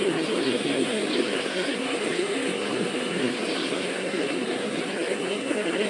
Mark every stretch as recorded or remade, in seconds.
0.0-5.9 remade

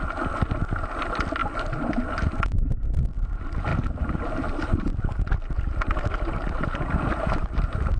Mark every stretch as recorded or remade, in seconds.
0.0-1.4 recorded; 1.4-2.0 remade; 2.0-3.7 recorded; 3.7-6.4 remade; 6.4-8.0 recorded